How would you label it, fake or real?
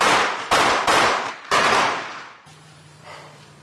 fake